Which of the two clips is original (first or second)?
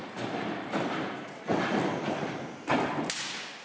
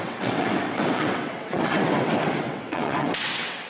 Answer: first